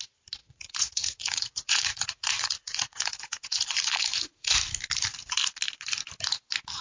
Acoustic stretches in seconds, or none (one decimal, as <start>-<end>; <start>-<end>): 0.0-0.4; 4.5-6.8